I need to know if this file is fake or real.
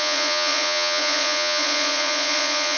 fake